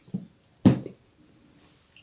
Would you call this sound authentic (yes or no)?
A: yes